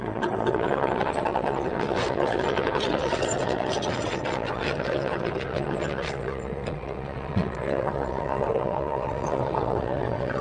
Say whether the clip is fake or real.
fake